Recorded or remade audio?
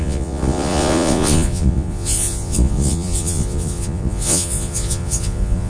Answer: remade